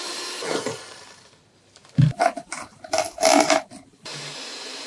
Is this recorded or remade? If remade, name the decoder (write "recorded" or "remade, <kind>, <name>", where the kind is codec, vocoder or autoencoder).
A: remade, vocoder, BigVGAN v2